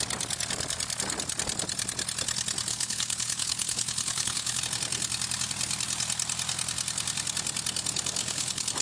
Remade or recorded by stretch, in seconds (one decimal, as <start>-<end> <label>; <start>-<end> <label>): 0.0-2.7 recorded; 2.7-4.6 remade; 4.6-8.2 recorded; 8.2-8.8 remade